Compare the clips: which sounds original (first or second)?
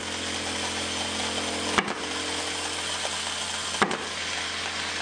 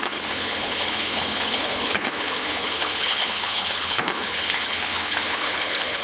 first